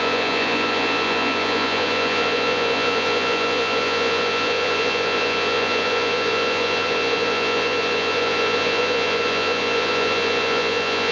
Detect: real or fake fake